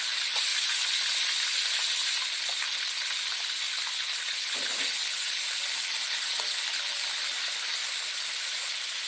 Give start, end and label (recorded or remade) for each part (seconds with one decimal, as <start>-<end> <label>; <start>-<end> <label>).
0.0-0.5 remade; 0.5-4.3 recorded; 4.3-7.8 remade; 7.8-9.1 recorded